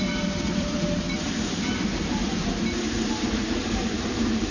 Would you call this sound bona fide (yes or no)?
no